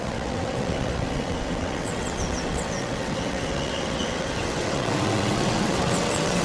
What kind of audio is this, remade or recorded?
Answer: remade